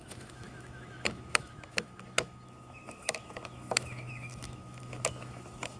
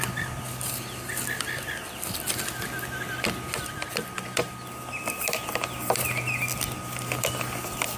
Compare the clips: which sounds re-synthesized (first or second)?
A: first